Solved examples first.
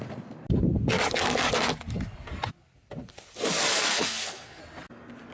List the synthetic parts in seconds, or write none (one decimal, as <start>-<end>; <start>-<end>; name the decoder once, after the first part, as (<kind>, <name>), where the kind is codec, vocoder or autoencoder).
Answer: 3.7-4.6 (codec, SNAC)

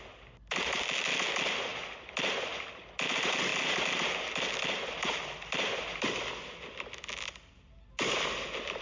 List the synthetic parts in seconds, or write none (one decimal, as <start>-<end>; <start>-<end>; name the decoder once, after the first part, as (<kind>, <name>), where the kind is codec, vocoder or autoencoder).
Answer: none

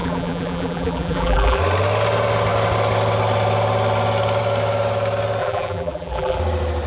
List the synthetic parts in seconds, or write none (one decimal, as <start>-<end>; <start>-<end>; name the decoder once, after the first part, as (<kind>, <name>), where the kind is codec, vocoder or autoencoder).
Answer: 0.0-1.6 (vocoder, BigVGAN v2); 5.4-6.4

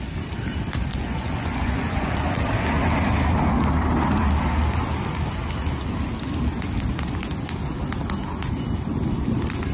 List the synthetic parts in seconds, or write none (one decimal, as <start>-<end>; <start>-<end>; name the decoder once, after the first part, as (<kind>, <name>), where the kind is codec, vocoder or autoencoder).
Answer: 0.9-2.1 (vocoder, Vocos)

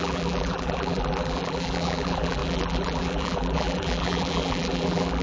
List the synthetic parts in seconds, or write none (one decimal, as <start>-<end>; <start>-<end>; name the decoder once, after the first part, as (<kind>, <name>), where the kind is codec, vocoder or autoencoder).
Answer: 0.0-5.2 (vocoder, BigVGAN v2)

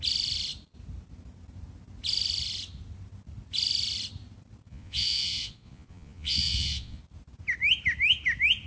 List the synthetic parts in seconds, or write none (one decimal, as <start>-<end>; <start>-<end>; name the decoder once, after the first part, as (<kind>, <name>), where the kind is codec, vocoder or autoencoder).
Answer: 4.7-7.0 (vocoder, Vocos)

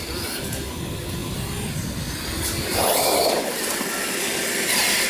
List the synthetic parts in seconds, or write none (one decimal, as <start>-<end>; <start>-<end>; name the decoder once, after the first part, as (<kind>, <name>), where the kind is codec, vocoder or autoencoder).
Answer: none

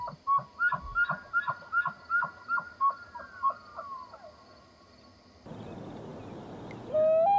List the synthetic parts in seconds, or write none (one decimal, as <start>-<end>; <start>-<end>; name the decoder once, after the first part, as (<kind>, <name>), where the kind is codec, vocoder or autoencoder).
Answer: none